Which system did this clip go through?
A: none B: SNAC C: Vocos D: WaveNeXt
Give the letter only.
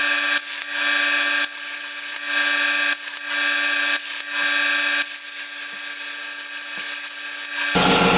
A